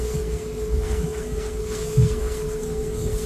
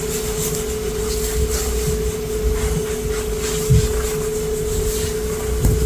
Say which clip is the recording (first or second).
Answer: second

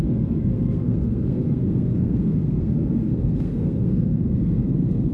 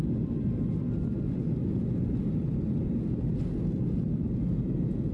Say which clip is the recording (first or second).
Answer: second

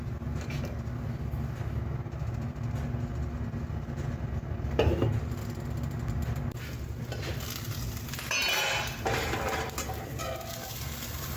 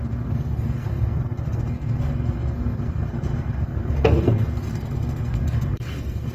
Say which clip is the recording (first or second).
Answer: first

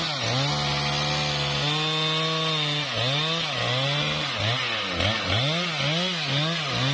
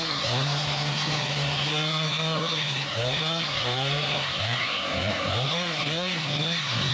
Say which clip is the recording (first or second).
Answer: first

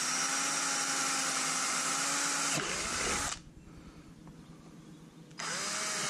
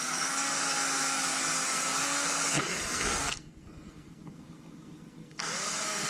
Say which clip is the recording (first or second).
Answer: first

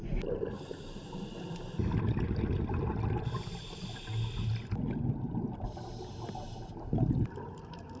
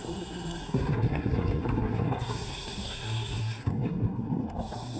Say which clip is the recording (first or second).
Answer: first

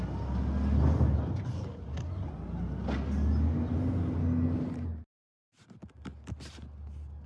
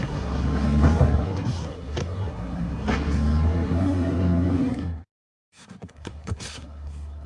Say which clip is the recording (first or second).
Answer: first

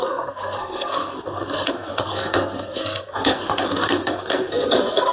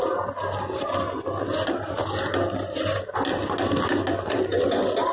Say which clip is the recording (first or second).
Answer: second